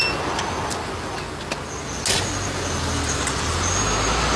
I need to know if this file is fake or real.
real